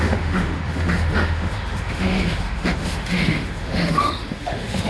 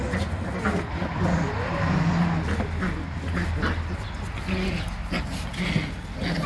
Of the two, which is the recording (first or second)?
second